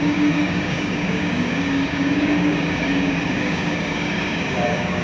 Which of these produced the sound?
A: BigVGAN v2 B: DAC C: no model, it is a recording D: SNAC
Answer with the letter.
B